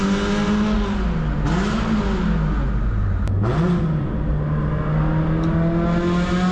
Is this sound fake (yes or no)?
no